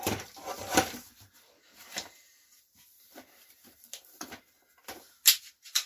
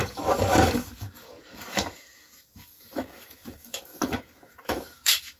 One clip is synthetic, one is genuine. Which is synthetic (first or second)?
second